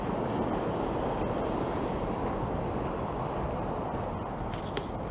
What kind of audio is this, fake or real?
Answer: real